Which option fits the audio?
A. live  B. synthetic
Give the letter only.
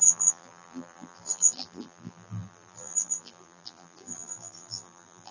B